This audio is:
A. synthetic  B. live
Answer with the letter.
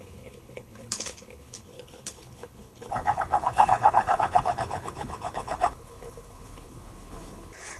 A